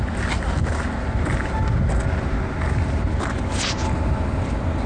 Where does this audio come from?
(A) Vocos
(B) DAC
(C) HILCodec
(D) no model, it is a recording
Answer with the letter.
D